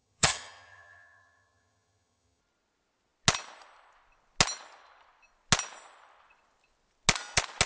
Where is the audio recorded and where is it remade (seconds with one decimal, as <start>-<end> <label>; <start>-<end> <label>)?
0.0-2.4 remade; 2.4-7.7 recorded